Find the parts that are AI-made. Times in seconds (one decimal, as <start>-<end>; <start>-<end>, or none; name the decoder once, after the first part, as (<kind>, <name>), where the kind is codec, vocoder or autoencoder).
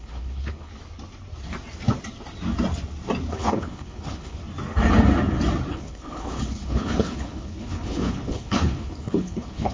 0.0-0.7 (codec, HILCodec); 3.3-4.4; 5.7-9.7